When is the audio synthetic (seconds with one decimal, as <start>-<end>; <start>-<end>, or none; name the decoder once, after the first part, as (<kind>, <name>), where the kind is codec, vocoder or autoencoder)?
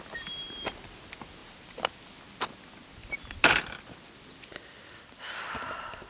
1.4-2.2 (vocoder, BigVGAN v2); 3.0-3.6